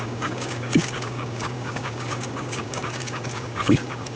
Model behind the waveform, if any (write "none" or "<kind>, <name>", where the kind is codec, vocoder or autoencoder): codec, DAC